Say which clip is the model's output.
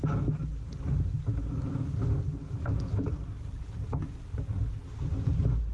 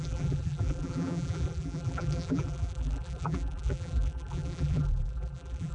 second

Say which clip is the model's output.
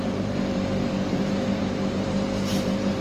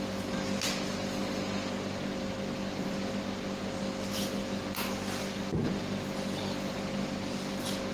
first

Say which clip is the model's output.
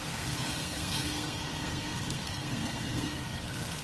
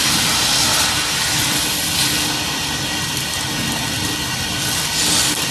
first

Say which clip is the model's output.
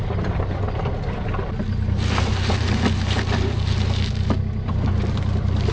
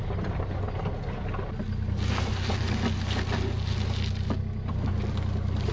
first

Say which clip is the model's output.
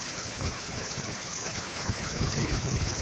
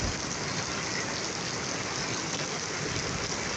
first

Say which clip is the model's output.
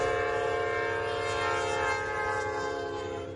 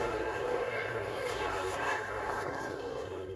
second